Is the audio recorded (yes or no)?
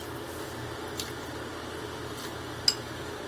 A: yes